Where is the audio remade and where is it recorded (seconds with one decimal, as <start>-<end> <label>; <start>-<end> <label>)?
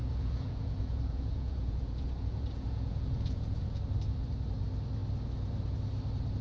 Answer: 0.0-3.8 remade; 3.8-6.4 recorded